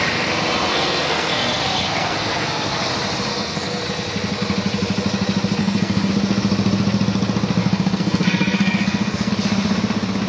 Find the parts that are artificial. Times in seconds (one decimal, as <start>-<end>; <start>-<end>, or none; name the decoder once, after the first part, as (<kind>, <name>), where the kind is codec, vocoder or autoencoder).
0.7-2.9 (codec, SNAC); 3.3-3.8; 5.6-6.1; 7.6-9.3